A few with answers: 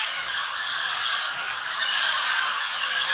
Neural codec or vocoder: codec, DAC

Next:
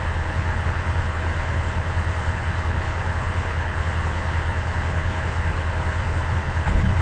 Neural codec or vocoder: codec, HILCodec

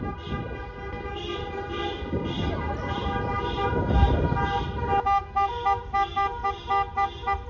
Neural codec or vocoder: none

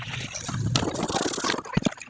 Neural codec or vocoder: none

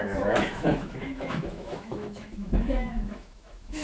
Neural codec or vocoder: autoencoder, DAC-VAE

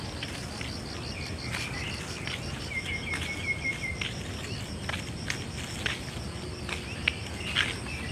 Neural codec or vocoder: none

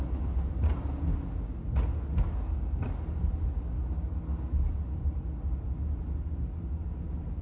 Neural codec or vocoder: none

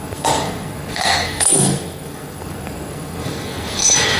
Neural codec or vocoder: codec, SNAC